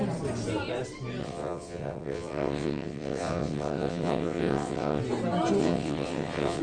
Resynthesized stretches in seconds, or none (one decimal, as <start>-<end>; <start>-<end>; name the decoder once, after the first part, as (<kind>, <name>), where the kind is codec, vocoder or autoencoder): 1.2-5.0 (vocoder, WaveNeXt); 5.6-6.6